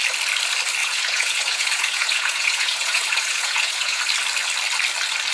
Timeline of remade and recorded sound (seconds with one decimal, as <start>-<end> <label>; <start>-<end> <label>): 0.0-0.8 recorded; 0.8-4.0 remade; 4.0-5.3 recorded